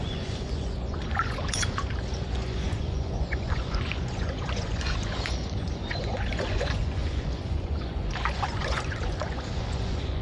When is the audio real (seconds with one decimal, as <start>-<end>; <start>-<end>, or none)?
none